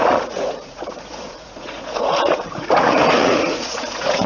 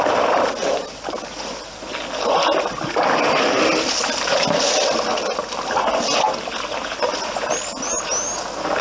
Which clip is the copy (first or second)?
first